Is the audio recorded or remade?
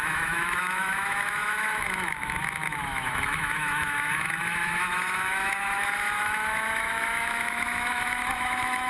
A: remade